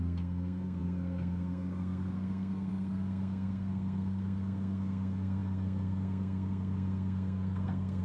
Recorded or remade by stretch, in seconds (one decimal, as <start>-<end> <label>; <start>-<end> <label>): 0.0-8.0 remade